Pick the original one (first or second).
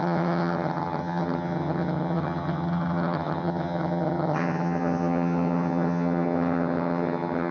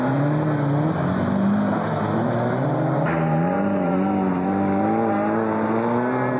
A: second